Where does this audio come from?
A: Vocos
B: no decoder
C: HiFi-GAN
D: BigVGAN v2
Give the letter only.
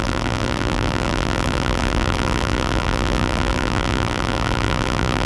D